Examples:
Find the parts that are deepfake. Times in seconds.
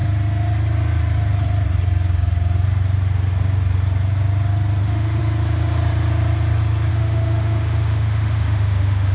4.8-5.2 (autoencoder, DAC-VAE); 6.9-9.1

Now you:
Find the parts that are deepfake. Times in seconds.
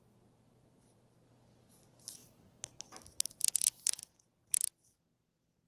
0.0-5.7 (vocoder, BigVGAN v2)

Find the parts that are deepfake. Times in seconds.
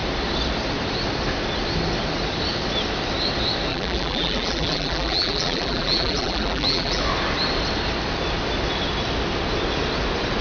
3.7-7.0 (vocoder, BigVGAN v2)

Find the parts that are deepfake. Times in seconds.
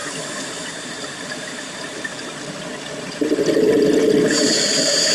0.0-2.1 (vocoder, BigVGAN v2); 4.5-5.1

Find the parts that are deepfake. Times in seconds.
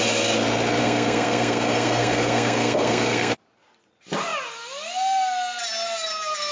0.8-3.3 (codec, SNAC)